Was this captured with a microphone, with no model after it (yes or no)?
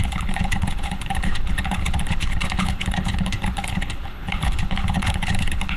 no